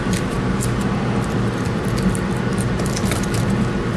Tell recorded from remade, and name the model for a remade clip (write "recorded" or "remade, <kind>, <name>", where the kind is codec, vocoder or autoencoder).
remade, vocoder, BigVGAN v2